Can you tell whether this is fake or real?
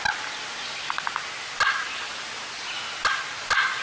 real